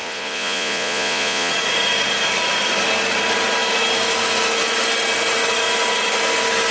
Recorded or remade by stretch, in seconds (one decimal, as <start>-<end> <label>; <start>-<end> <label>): 0.0-1.5 remade; 1.5-6.7 recorded